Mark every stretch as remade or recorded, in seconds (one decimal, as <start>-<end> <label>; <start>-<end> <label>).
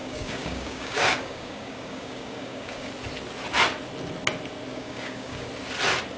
0.0-2.9 remade; 2.9-4.7 recorded; 4.7-5.5 remade; 5.5-6.2 recorded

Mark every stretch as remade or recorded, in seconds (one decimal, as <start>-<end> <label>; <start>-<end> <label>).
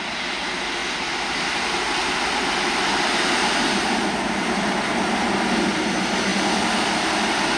0.0-7.6 recorded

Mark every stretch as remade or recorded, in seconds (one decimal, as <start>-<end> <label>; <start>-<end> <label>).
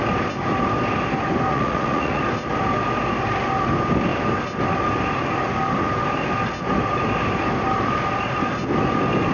0.0-1.5 recorded; 1.5-2.2 remade; 2.2-9.3 recorded